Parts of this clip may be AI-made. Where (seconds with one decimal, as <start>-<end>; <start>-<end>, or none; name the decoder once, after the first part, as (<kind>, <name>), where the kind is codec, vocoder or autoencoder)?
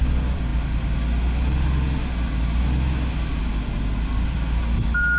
none